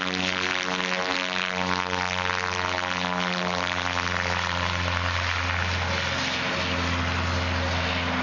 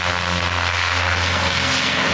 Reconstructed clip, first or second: second